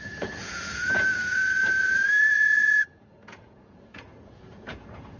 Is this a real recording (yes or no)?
no